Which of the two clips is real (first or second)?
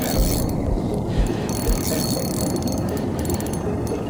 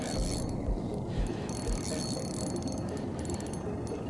second